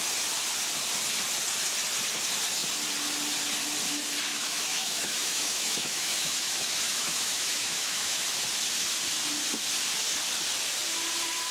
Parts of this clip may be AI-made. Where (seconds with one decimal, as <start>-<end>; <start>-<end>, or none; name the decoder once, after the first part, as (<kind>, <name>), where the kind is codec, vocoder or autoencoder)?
4.3-8.2 (autoencoder, DAC-VAE)